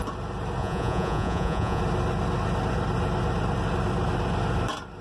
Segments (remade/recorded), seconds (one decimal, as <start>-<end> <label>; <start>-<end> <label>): 0.0-0.6 recorded; 0.6-1.8 remade; 1.8-5.0 recorded